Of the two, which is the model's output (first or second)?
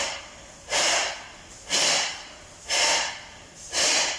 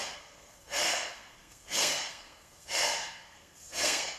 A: second